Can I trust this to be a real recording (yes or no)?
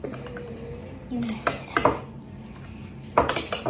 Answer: yes